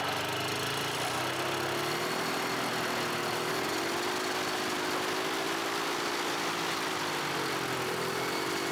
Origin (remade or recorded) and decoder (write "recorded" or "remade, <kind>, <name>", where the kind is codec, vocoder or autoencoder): recorded